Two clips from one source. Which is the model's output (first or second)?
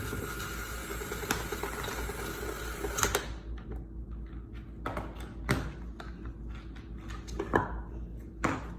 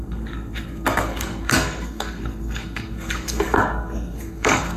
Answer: second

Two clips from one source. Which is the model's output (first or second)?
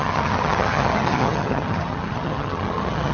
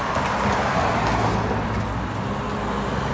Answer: first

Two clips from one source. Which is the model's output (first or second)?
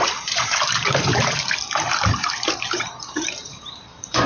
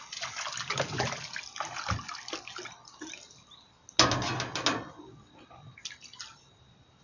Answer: first